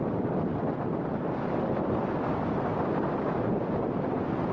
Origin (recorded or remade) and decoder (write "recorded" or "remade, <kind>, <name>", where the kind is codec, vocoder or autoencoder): recorded